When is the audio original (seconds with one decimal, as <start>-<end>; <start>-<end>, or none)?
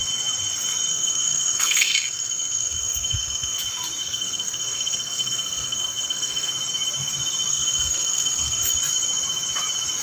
0.0-0.9; 3.6-4.0; 6.5-7.5; 8.7-10.0